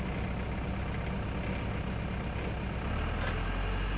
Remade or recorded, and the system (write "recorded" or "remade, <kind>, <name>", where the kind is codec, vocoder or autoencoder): recorded